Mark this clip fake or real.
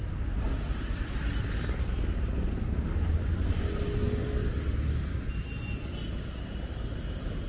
real